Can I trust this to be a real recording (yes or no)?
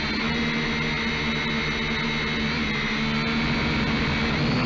yes